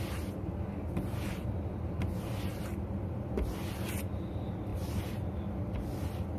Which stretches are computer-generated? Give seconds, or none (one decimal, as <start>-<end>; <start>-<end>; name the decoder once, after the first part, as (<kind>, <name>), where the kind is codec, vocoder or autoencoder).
none